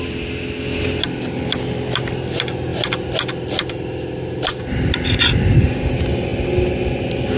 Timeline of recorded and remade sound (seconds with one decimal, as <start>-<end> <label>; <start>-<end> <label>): 0.0-7.4 recorded